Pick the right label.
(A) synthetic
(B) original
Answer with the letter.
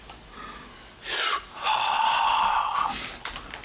B